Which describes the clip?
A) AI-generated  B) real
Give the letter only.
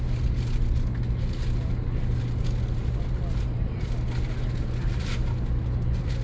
B